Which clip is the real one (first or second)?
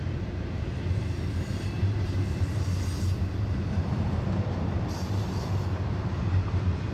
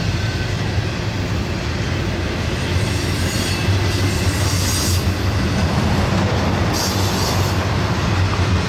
second